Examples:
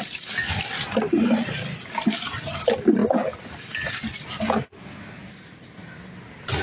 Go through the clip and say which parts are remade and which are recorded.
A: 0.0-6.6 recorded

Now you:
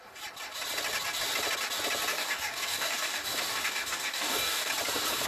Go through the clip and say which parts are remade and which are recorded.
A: 0.0-2.1 recorded; 2.1-4.7 remade; 4.7-5.3 recorded

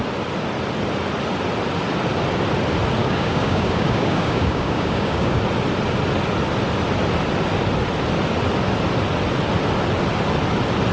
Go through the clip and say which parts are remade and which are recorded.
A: 0.0-3.0 recorded; 3.0-5.4 remade; 5.4-10.9 recorded

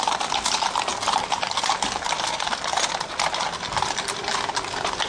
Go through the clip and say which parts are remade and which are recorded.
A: 0.0-5.1 recorded

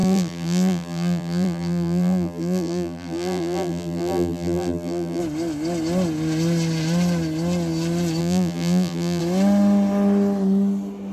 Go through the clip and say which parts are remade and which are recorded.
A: 0.0-5.2 remade; 5.2-8.2 recorded; 8.2-9.2 remade; 9.2-11.1 recorded

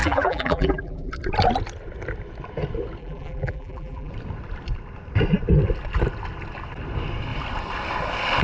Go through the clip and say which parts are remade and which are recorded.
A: 0.0-1.1 remade; 1.1-3.0 recorded; 3.0-4.1 remade; 4.1-8.4 recorded